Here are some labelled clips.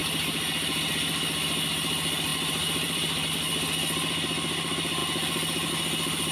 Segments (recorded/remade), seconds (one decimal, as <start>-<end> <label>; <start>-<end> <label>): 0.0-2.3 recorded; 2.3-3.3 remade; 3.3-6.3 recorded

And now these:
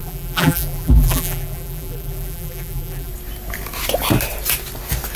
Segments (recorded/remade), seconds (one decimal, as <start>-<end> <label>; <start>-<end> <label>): 0.0-3.1 remade; 3.1-5.2 recorded

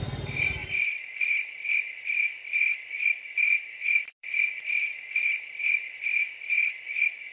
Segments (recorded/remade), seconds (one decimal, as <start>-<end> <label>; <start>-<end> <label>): 0.0-0.6 recorded; 0.6-1.8 remade; 1.8-2.7 recorded; 2.7-4.8 remade; 4.8-7.3 recorded

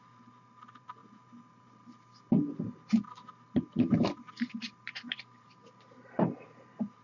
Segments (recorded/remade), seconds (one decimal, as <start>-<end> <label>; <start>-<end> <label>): 0.0-7.0 remade

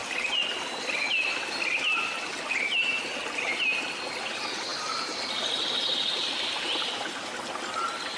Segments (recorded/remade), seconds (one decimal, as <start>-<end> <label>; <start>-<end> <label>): 0.0-8.2 recorded